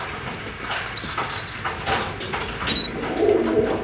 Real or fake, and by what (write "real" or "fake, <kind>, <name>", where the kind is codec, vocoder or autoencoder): real